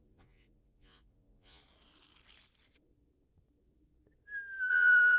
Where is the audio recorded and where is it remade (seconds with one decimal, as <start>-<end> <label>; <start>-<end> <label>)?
0.0-1.6 remade; 1.6-4.7 recorded; 4.7-5.2 remade